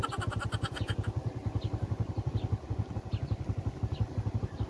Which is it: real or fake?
real